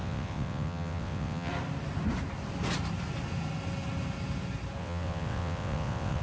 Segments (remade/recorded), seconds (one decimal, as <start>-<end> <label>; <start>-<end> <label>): 0.0-1.5 remade; 1.5-4.8 recorded; 4.8-6.2 remade